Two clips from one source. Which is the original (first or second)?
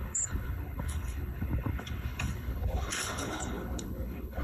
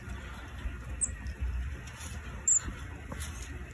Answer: second